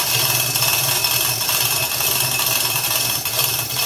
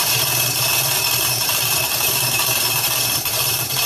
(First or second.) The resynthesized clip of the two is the second